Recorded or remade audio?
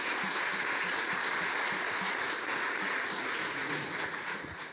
remade